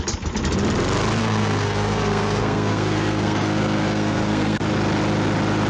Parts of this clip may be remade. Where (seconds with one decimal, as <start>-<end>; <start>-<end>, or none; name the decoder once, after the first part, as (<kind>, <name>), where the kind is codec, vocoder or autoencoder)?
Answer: 1.2-4.6 (codec, SNAC)